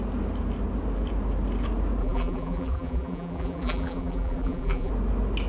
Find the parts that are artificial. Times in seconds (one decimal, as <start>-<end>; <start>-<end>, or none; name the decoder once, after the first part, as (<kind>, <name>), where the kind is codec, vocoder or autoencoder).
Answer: 2.0-4.9 (vocoder, BigVGAN v2)